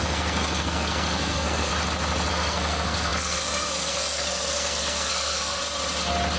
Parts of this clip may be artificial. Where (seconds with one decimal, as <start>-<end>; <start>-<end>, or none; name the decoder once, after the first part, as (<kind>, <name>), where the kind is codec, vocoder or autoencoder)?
0.0-1.7 (codec, SNAC); 2.3-5.6